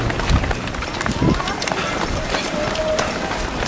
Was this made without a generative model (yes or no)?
yes